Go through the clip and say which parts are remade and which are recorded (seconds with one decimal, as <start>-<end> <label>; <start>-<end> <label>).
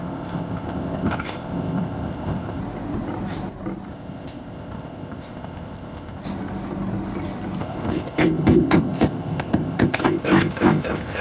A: 0.0-2.6 remade; 2.6-3.9 recorded; 3.9-6.2 remade; 6.2-7.6 recorded; 7.6-11.2 remade